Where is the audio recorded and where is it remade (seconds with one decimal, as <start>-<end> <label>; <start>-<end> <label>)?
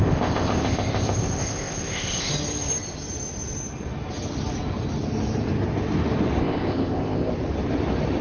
0.0-2.3 remade; 2.3-6.4 recorded; 6.4-7.3 remade; 7.3-8.2 recorded